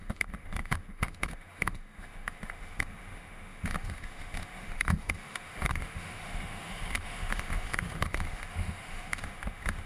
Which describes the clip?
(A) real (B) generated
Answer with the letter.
B